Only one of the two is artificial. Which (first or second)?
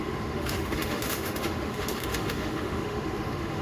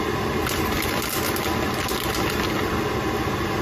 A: first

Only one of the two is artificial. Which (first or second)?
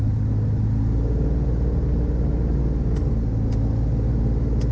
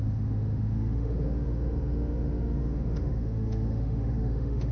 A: second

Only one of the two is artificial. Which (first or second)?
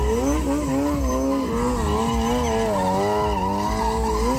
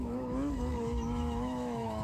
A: second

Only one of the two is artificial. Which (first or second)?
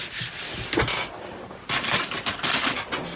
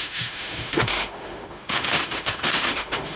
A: second